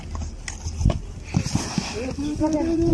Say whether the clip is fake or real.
real